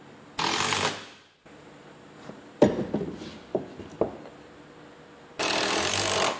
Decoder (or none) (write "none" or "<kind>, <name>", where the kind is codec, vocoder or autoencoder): none